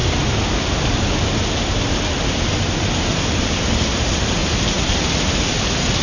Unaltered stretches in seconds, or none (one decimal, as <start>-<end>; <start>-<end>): 2.6-4.4; 5.6-6.0